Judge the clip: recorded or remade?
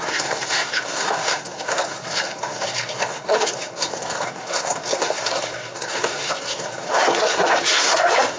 remade